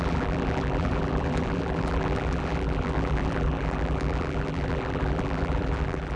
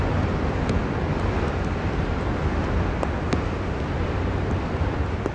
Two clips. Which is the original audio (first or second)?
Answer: second